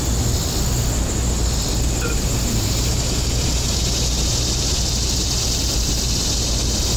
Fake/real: real